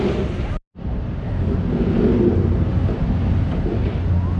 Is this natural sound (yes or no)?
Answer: yes